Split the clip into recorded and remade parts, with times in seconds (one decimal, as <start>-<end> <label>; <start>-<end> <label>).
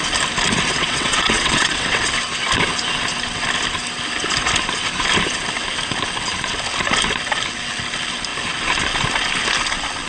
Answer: 0.0-0.7 recorded; 0.7-2.1 remade; 2.1-10.1 recorded